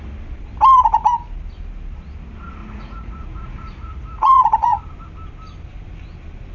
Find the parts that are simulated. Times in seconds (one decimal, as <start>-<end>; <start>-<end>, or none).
2.6-4.8